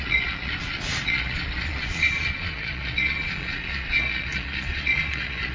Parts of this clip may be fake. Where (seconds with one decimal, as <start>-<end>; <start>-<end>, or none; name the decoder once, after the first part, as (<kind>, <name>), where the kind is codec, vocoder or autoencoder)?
0.0-5.5 (vocoder, Vocos)

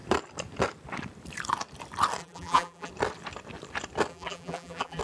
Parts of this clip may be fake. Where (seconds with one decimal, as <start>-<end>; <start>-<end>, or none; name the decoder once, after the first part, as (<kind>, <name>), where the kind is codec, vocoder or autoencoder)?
2.2-2.9 (vocoder, BigVGAN v2); 4.1-5.0